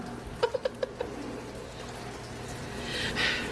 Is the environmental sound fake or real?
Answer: real